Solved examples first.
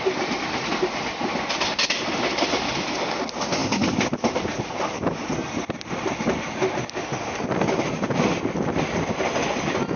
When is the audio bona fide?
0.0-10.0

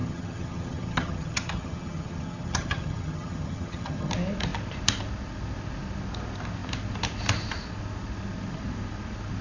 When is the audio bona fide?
4.1-9.4

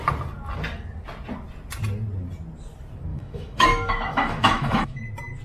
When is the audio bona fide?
0.0-3.1; 5.0-5.4

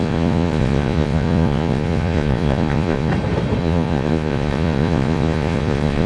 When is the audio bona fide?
3.1-3.6

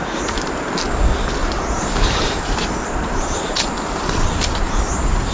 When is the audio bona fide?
0.0-1.4; 4.6-5.3

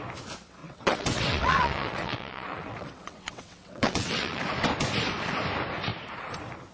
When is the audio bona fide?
0.0-0.6; 4.4-6.7